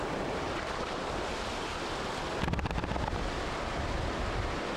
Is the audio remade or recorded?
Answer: recorded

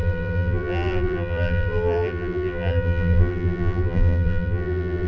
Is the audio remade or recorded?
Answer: remade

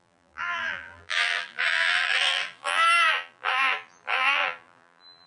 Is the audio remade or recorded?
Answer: remade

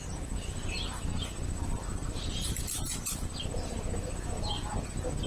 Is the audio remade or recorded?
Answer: remade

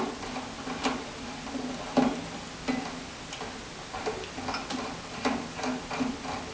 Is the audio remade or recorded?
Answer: recorded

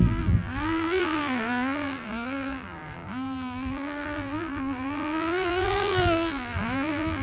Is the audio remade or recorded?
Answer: remade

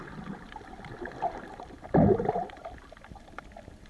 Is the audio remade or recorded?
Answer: recorded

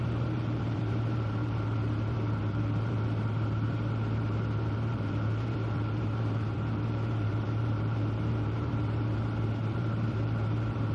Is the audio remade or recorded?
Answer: remade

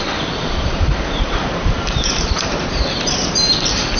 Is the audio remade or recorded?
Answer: remade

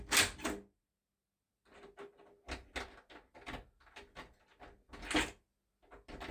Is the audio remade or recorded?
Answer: recorded